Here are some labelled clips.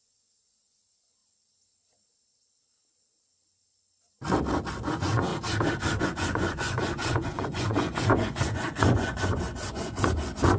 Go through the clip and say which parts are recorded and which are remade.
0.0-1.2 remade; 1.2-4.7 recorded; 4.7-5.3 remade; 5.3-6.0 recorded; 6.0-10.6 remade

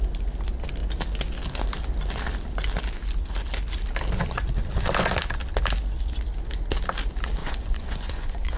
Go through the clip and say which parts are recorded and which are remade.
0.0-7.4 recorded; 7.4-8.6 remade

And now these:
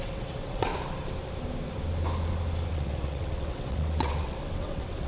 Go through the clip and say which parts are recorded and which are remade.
0.0-0.7 remade; 0.7-2.7 recorded; 2.7-5.1 remade

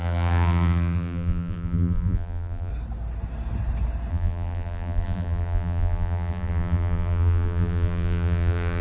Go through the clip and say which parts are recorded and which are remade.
0.0-2.7 remade; 2.7-4.1 recorded; 4.1-8.8 remade

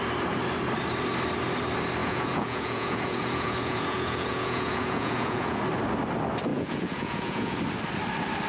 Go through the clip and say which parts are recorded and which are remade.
0.0-2.0 recorded; 2.0-5.6 remade; 5.6-6.5 recorded; 6.5-7.6 remade; 7.6-8.5 recorded

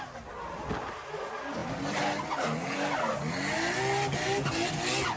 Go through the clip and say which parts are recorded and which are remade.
0.0-5.2 recorded

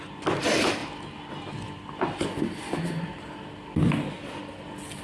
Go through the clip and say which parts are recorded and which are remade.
0.0-5.0 recorded